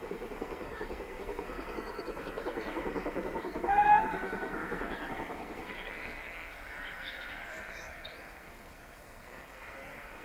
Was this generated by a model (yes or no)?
yes